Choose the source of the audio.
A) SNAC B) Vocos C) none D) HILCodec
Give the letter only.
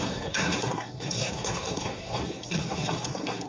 A